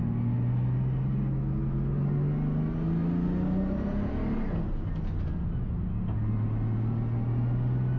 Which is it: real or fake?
real